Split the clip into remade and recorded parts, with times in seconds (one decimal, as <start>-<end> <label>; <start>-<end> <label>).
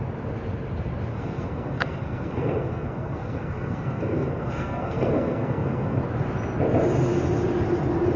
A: 0.0-1.1 recorded; 1.1-6.0 remade; 6.0-8.2 recorded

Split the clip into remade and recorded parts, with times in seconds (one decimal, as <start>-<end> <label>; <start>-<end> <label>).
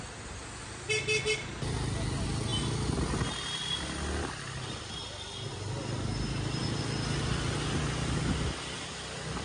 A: 0.0-9.4 recorded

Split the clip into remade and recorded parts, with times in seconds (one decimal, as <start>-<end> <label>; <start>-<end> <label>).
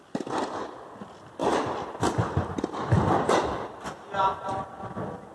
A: 0.0-5.3 recorded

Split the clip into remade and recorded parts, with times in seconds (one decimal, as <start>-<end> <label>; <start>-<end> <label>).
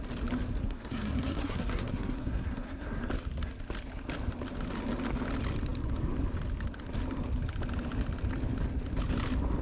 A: 0.0-0.6 recorded; 0.6-3.0 remade; 3.0-9.6 recorded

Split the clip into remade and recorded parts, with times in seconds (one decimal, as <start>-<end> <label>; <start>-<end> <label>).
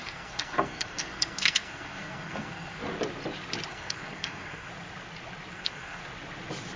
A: 0.0-2.8 remade; 2.8-3.7 recorded; 3.7-4.7 remade; 4.7-5.5 recorded; 5.5-6.0 remade; 6.0-6.8 recorded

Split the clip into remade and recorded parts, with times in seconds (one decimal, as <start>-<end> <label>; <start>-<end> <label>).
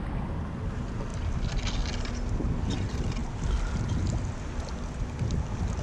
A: 0.0-5.8 recorded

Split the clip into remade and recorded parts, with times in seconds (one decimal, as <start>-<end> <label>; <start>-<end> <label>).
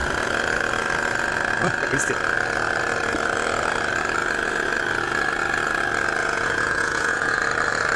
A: 0.0-6.2 recorded; 6.2-7.4 remade; 7.4-8.0 recorded